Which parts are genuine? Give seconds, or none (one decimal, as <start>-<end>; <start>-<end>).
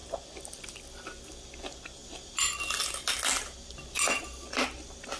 0.8-5.2